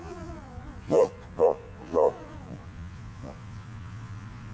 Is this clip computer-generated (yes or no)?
yes